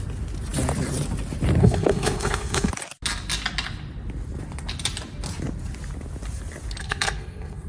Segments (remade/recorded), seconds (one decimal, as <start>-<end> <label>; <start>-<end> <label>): 0.0-1.6 recorded; 1.6-2.7 remade; 2.7-6.8 recorded; 6.8-7.7 remade